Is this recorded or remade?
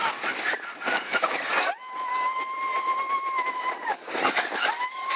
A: recorded